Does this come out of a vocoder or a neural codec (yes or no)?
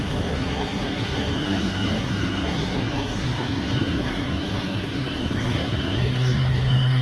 yes